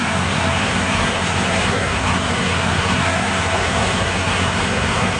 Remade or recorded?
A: remade